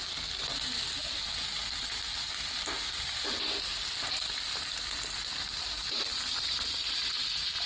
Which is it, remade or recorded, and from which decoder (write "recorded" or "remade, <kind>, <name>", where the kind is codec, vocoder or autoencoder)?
recorded